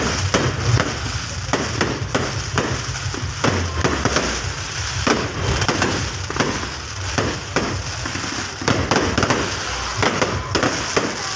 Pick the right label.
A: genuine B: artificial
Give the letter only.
A